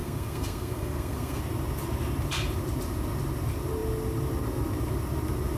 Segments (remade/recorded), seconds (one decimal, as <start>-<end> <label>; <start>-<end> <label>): 0.0-1.4 remade; 1.4-5.6 recorded